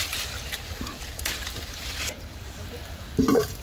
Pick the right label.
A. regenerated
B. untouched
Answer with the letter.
A